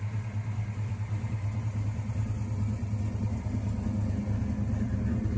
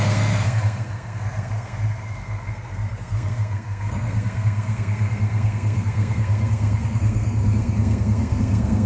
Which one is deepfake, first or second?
second